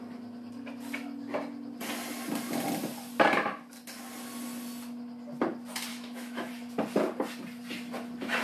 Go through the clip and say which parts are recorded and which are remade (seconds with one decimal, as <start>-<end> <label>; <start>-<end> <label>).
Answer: 0.0-5.9 recorded; 5.9-6.5 remade; 6.5-8.4 recorded